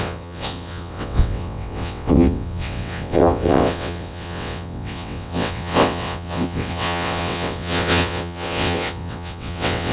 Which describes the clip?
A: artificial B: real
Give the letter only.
A